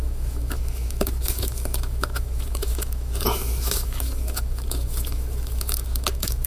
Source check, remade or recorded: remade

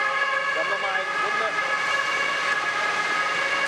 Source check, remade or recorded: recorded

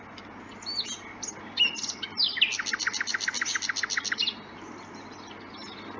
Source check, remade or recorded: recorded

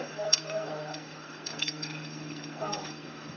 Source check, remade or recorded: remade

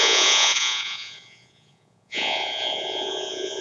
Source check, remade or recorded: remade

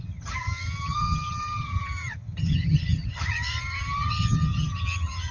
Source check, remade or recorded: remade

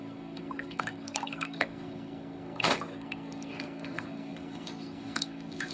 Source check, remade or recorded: remade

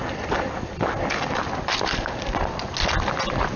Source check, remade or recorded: recorded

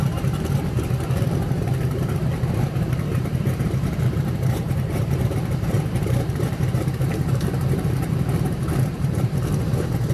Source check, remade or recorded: remade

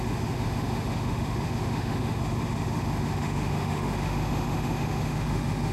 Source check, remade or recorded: remade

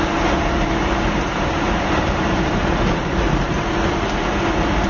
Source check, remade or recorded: remade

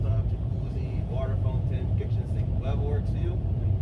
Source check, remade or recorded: remade